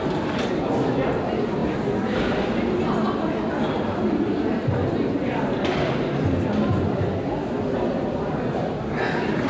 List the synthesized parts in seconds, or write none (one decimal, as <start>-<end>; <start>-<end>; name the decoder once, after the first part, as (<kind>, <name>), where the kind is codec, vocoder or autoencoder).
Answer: none